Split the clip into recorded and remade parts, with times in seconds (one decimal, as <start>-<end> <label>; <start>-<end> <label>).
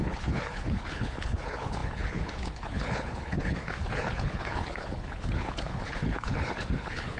0.0-7.2 remade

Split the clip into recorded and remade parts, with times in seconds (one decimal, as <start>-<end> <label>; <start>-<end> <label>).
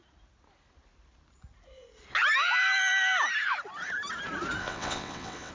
0.0-4.6 recorded; 4.6-5.5 remade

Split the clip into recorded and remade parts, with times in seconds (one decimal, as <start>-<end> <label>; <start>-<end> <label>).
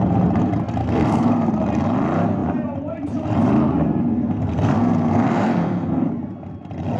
0.0-0.8 recorded; 0.8-1.5 remade; 1.5-4.1 recorded; 4.1-6.1 remade; 6.1-7.0 recorded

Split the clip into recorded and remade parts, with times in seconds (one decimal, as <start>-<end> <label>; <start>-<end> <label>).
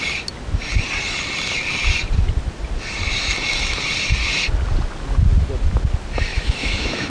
0.0-6.3 recorded; 6.3-7.1 remade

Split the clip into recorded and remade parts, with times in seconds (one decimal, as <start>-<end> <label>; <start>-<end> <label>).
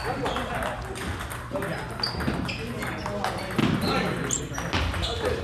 0.0-0.5 remade; 0.5-5.4 recorded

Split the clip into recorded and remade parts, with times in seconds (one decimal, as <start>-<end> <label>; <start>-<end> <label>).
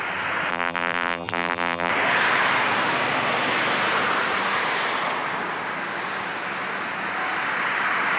0.0-0.5 recorded; 0.5-1.9 remade; 1.9-8.2 recorded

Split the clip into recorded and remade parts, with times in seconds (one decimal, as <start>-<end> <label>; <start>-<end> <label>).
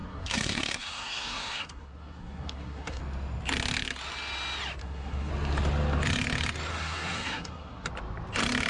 0.0-3.0 remade; 3.0-4.8 recorded; 4.8-5.3 remade; 5.3-6.7 recorded; 6.7-7.9 remade; 7.9-8.7 recorded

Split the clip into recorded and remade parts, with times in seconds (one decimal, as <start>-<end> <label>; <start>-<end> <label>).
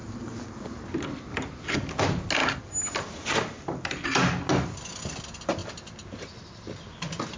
0.0-7.4 recorded